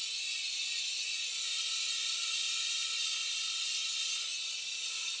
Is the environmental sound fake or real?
real